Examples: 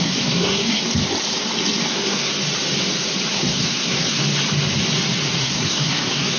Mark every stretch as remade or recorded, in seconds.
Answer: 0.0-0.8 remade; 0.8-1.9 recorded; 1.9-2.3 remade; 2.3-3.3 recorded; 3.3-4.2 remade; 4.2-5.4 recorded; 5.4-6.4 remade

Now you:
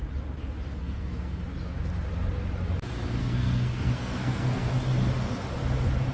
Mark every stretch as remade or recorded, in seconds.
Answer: 0.0-0.8 recorded; 0.8-1.4 remade; 1.4-3.2 recorded; 3.2-4.7 remade; 4.7-6.1 recorded

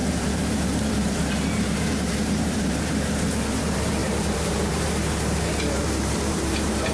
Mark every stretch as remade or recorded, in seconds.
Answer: 0.0-6.9 remade

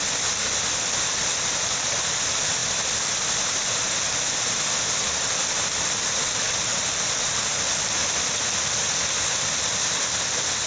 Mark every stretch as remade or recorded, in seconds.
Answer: 0.0-10.7 recorded

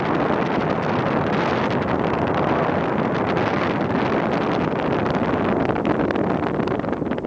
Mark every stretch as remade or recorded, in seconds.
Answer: 0.0-7.3 recorded